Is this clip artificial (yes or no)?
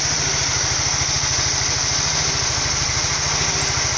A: no